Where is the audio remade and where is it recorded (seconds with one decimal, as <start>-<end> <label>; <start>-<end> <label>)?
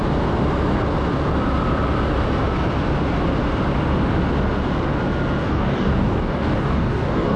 0.0-5.4 recorded; 5.4-7.4 remade